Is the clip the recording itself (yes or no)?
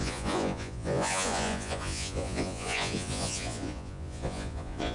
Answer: no